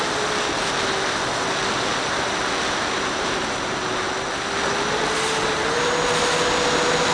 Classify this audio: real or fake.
real